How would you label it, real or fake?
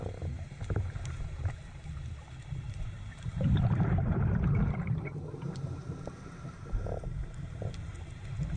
fake